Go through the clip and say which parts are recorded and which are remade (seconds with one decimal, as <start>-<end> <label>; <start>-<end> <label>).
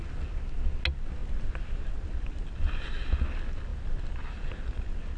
0.0-5.2 recorded